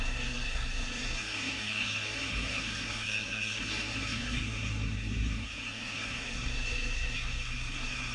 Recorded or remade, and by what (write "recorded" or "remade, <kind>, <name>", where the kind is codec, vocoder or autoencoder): remade, codec, SNAC